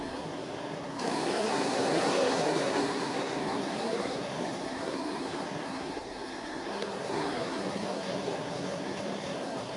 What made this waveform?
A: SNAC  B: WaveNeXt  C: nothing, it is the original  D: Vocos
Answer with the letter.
A